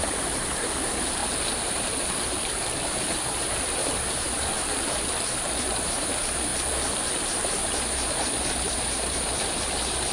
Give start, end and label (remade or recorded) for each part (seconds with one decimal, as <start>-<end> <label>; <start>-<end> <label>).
0.0-1.2 remade; 1.2-1.7 recorded; 1.7-6.5 remade; 6.5-7.1 recorded; 7.1-10.1 remade